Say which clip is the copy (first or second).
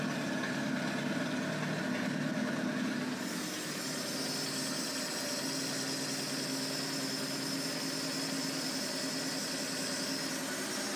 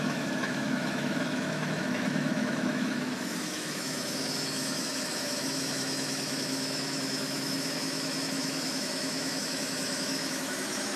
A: second